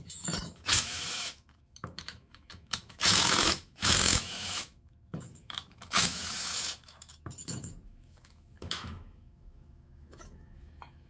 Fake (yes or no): yes